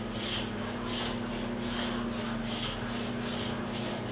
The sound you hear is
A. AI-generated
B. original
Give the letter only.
B